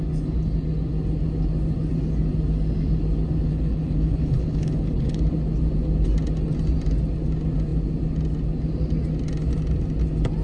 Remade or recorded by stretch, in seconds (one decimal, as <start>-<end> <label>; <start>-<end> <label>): 0.0-3.5 recorded; 3.5-5.2 remade; 5.2-10.4 recorded